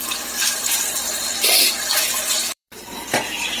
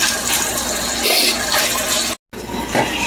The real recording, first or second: second